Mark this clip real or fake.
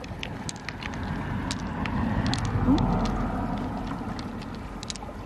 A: real